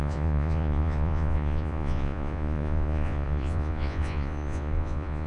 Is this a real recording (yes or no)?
no